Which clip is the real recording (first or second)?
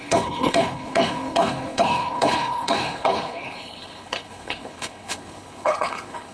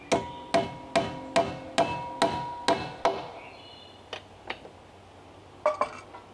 second